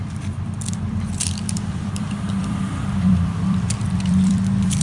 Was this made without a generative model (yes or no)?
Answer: no